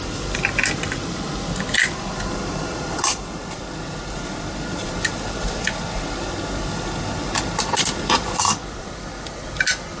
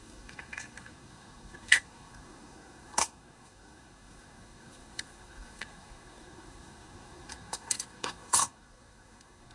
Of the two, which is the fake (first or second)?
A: second